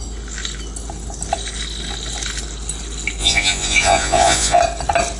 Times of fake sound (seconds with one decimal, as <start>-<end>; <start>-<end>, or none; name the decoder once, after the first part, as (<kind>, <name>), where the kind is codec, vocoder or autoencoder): 3.2-4.6 (vocoder, Vocos)